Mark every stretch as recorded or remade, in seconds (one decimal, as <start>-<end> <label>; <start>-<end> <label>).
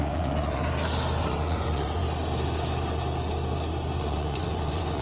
0.0-0.6 remade; 0.6-1.2 recorded; 1.2-2.0 remade; 2.0-4.0 recorded; 4.0-5.0 remade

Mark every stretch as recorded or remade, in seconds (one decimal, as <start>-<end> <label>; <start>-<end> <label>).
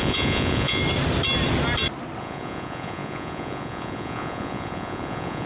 0.0-0.8 remade; 0.8-2.2 recorded; 2.2-5.5 remade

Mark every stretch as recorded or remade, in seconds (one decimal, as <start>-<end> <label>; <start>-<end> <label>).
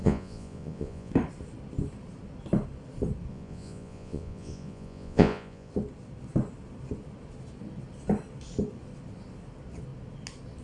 0.0-1.1 remade; 1.1-3.3 recorded; 3.3-5.7 remade; 5.7-10.6 recorded